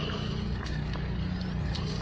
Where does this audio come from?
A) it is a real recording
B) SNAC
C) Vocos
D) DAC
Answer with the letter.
A